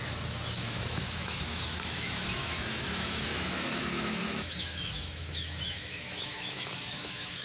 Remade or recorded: remade